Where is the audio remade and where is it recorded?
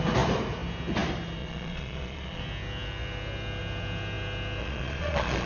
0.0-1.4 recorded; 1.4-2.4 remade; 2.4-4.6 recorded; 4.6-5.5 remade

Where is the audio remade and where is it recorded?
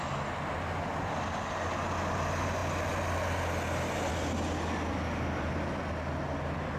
0.0-6.8 recorded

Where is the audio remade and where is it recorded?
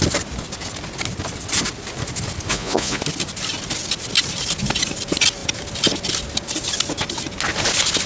0.0-2.5 recorded; 2.5-3.0 remade; 3.0-8.1 recorded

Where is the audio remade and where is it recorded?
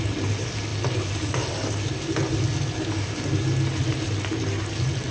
0.0-5.1 recorded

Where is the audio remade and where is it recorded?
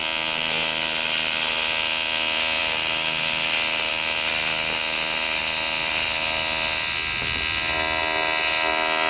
0.0-9.1 recorded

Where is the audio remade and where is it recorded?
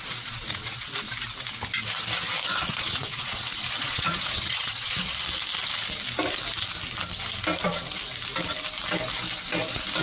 0.0-1.1 remade; 1.1-2.5 recorded; 2.5-5.1 remade; 5.1-10.0 recorded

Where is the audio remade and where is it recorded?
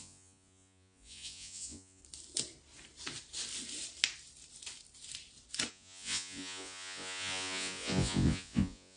0.0-2.0 remade; 2.0-5.7 recorded; 5.7-9.0 remade